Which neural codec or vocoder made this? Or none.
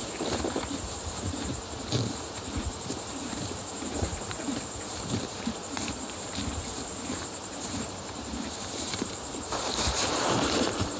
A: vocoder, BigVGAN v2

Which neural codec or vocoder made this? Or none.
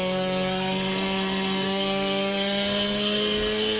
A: codec, SNAC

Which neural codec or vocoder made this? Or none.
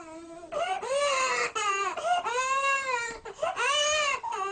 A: none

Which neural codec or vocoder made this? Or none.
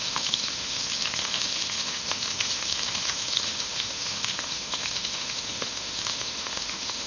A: autoencoder, DAC-VAE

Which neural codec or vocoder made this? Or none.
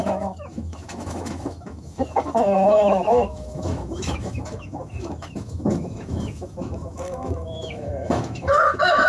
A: autoencoder, DAC-VAE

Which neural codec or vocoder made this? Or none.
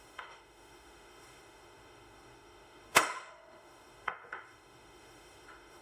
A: autoencoder, DAC-VAE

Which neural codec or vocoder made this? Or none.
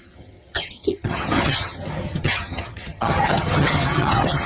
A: vocoder, HiFi-GAN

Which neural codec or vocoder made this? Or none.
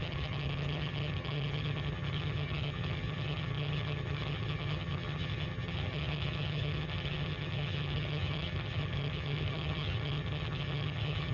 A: vocoder, HiFi-GAN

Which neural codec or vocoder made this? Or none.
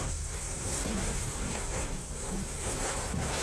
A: codec, SNAC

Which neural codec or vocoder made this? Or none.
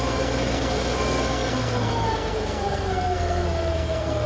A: codec, SNAC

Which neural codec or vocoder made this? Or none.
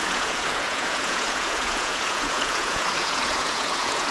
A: vocoder, Vocos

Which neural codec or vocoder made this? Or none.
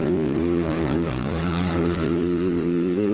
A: vocoder, Vocos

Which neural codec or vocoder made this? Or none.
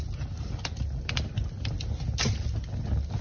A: none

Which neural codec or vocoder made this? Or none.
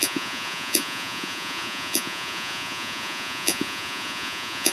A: vocoder, Vocos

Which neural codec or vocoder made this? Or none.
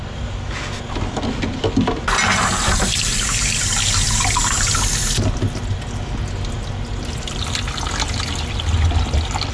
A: none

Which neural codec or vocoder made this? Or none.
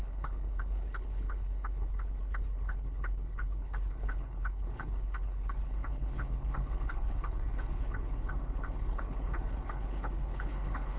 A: codec, HILCodec